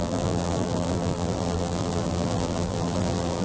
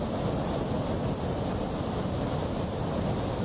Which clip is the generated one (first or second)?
first